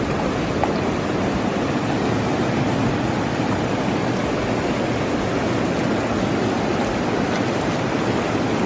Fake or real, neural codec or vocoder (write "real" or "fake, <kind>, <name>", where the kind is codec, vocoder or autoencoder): real